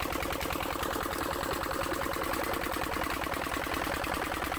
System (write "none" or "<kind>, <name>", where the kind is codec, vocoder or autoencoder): vocoder, BigVGAN v2